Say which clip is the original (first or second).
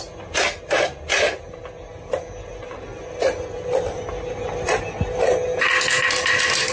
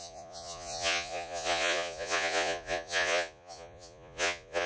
first